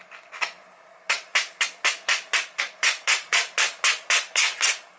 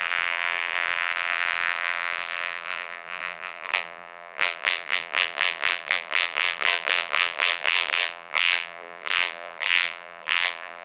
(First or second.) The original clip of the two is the first